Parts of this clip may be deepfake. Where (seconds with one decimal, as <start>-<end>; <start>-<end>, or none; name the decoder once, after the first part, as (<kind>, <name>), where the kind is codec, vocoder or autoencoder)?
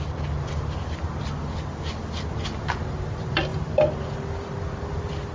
none